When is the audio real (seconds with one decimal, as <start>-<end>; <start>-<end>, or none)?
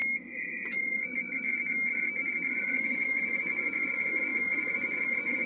0.0-0.6; 1.5-2.5